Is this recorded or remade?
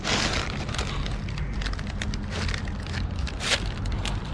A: recorded